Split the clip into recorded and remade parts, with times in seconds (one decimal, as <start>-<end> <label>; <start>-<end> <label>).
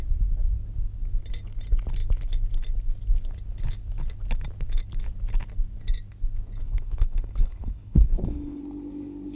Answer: 0.0-6.6 recorded; 6.6-8.6 remade; 8.6-9.4 recorded